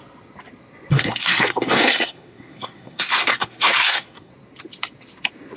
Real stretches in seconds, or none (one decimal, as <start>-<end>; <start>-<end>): 0.0-0.9; 4.3-5.6